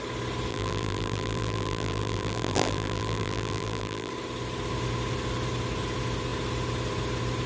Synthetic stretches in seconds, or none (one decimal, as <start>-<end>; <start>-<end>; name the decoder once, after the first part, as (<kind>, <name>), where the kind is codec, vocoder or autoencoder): 0.5-4.1 (vocoder, BigVGAN v2)